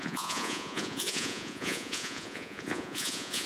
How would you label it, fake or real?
fake